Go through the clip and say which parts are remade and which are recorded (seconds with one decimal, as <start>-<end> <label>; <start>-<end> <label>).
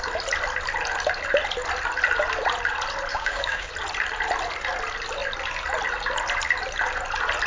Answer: 0.0-3.1 recorded; 3.1-3.7 remade; 3.7-7.5 recorded